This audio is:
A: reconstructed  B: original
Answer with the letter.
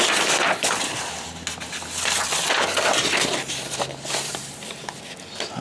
B